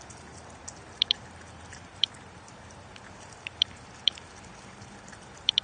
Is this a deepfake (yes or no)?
yes